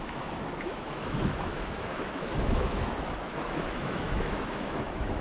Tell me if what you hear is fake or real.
fake